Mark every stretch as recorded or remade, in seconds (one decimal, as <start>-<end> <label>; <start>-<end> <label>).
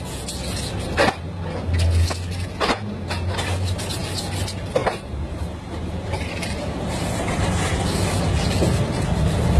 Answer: 0.0-4.8 recorded; 4.8-7.8 remade; 7.8-9.6 recorded